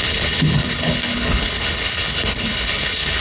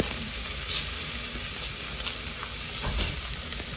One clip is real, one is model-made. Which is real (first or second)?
second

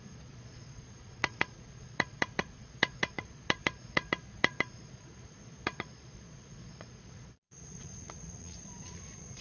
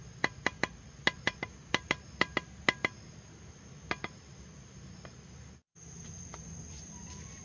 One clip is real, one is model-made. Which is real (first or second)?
second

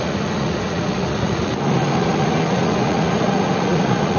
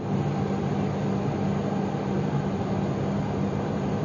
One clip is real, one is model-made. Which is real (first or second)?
second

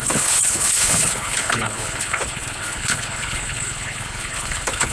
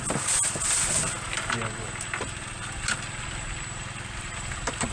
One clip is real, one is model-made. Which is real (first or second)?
second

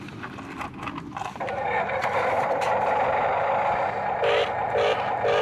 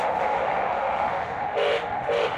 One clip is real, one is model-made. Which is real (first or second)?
first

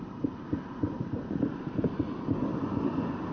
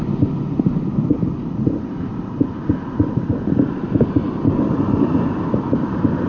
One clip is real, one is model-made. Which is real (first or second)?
first